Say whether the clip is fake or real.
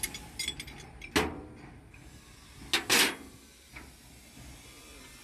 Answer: real